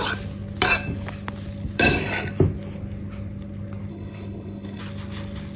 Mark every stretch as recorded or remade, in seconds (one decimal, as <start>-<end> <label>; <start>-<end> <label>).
0.0-3.9 recorded; 3.9-4.8 remade; 4.8-5.6 recorded